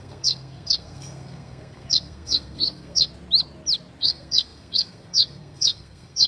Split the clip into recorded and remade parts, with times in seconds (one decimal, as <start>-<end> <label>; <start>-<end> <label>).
0.0-3.1 remade; 3.1-4.0 recorded; 4.0-6.3 remade